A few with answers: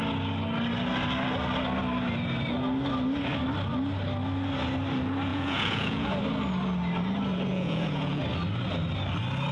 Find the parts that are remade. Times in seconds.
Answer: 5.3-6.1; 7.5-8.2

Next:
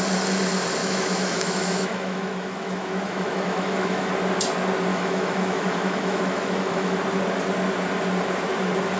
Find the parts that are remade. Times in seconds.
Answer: 0.8-4.1; 4.9-6.9

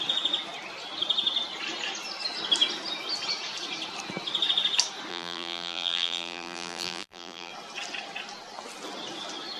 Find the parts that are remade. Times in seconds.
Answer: 5.1-7.5

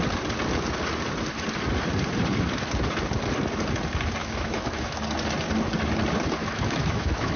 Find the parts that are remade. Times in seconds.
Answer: 4.2-5.0; 6.4-7.4

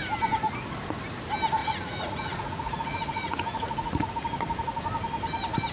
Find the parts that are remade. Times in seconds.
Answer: 1.6-4.1

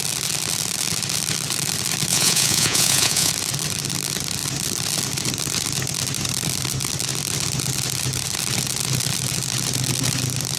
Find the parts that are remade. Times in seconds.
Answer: 2.1-3.3